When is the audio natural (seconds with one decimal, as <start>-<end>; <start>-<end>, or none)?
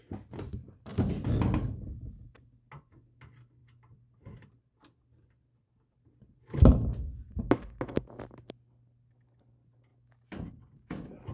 0.0-11.3